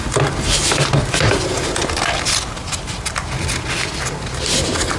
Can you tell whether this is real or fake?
real